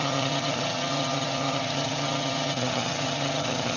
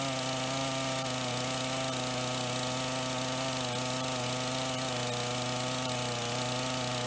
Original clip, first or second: second